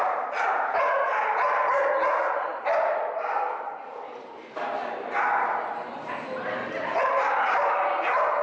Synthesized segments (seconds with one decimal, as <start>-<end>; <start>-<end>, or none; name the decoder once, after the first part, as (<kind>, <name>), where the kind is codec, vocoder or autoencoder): none